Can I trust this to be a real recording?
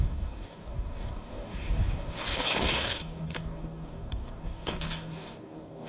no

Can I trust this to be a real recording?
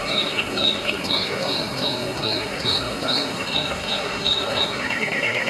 no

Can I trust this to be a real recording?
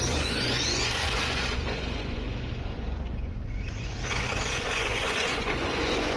no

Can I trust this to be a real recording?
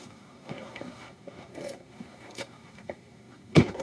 no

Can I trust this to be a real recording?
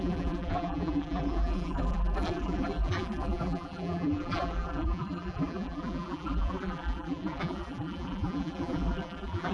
no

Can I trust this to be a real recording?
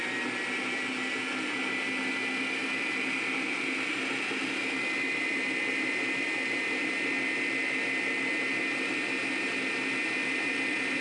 yes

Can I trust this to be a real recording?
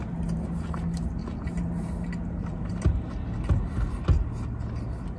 yes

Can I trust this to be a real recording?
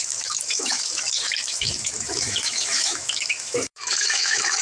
no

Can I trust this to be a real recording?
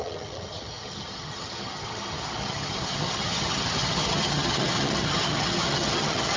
no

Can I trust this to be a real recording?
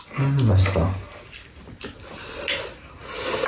yes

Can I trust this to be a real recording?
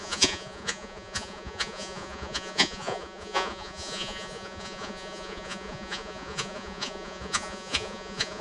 no